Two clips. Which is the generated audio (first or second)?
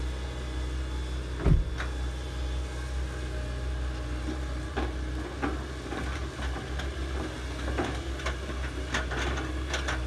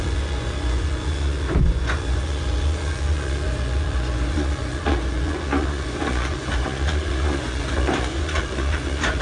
second